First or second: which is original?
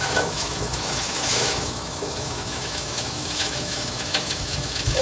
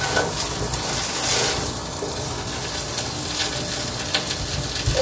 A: second